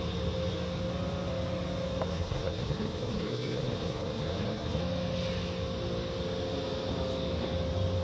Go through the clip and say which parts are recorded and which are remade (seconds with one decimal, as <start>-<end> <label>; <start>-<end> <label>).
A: 0.0-2.1 recorded; 2.1-4.8 remade; 4.8-8.0 recorded